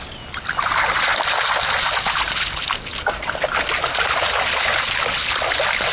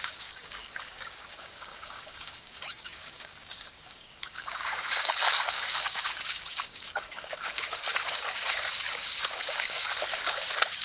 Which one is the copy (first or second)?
second